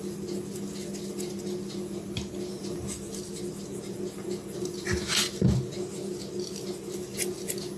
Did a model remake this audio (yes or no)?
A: no